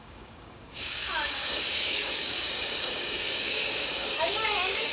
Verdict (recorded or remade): remade